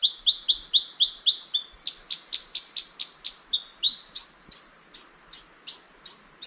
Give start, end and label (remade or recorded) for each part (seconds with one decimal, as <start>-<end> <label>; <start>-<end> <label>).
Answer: 0.0-6.5 recorded